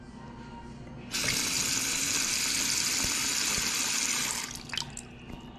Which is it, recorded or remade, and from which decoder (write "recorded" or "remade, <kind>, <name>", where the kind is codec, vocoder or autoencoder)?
recorded